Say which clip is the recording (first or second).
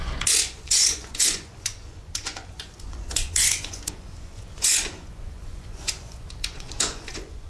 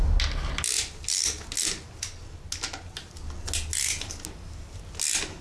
second